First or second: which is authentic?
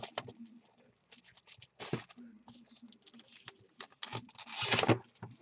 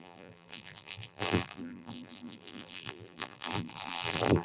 first